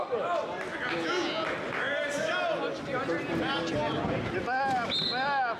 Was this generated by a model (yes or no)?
no